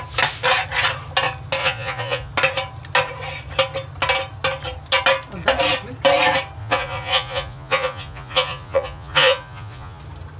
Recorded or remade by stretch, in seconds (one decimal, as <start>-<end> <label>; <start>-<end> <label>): 0.0-1.6 recorded; 1.6-2.3 remade; 2.3-6.6 recorded; 6.6-10.0 remade; 10.0-10.4 recorded